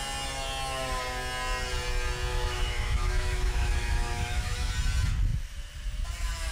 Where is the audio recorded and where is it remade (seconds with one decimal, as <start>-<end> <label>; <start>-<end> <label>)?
0.0-2.3 recorded; 2.3-4.7 remade; 4.7-6.5 recorded